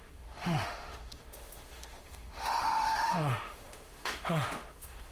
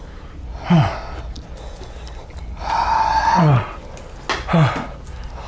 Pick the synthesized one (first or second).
first